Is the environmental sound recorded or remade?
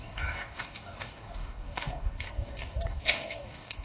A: remade